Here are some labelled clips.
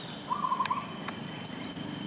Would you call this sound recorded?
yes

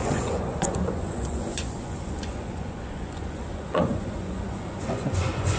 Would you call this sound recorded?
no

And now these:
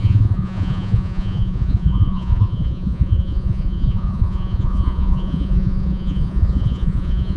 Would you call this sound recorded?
no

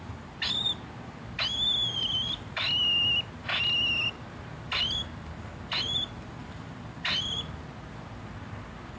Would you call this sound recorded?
yes